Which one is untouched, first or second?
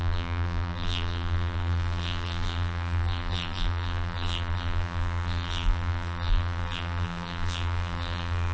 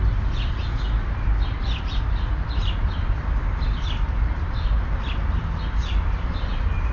second